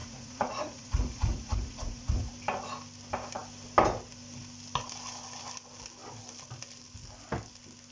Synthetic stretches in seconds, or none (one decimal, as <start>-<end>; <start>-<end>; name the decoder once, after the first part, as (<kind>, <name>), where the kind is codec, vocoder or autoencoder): 0.0-2.3 (vocoder, Vocos)